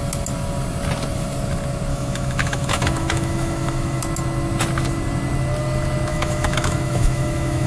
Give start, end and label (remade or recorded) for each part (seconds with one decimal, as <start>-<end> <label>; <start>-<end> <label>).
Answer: 0.0-1.9 recorded; 1.9-4.0 remade; 4.0-6.1 recorded; 6.1-7.7 remade